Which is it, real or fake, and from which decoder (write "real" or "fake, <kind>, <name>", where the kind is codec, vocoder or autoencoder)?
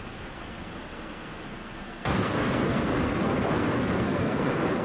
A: fake, codec, SNAC